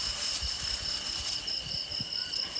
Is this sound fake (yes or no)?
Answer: no